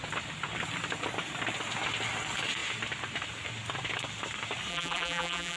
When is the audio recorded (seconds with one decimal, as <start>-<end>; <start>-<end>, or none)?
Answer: 0.0-4.7

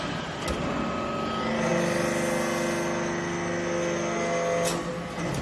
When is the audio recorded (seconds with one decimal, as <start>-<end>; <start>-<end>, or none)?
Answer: 0.0-5.4

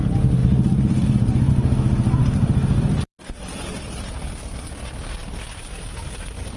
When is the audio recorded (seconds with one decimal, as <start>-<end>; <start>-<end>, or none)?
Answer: 0.0-2.2; 3.2-6.6

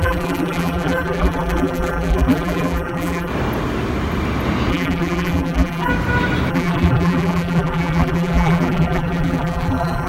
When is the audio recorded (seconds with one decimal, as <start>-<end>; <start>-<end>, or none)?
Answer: 3.3-4.7; 5.9-6.5

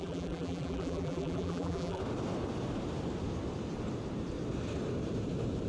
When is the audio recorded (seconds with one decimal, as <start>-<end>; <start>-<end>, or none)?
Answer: 2.0-5.7

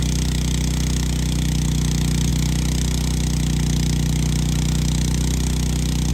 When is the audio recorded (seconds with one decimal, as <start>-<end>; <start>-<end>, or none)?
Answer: 0.0-6.1

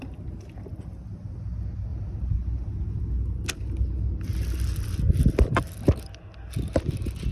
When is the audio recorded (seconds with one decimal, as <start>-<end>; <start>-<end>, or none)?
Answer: 0.0-0.7; 1.2-7.3

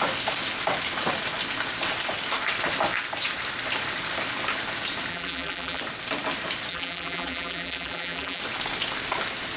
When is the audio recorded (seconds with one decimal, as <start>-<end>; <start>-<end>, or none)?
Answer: 0.0-5.1; 5.8-6.7; 8.4-9.6